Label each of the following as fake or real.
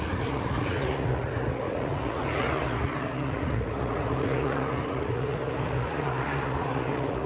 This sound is fake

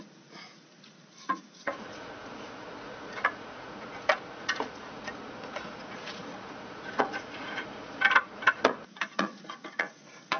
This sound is fake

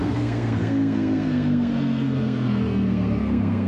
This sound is fake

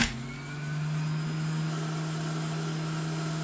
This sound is real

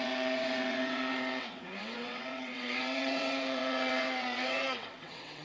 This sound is fake